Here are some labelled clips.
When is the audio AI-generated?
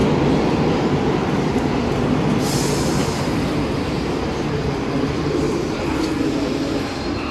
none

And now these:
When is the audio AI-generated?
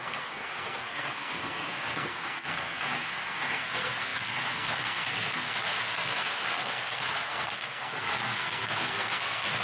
0.0-9.6 (codec, SNAC)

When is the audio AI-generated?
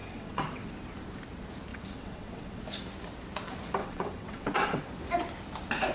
0.0-0.7 (vocoder, WaveNeXt); 1.7-2.6; 3.8-4.8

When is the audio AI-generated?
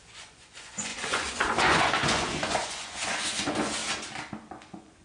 0.0-3.8 (vocoder, Vocos); 4.5-5.0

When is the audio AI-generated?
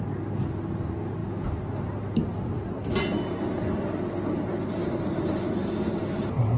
none